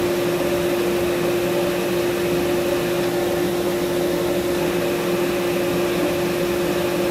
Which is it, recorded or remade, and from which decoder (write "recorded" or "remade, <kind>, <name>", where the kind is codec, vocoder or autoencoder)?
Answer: recorded